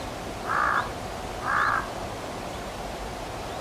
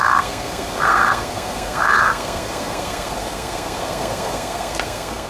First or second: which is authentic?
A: first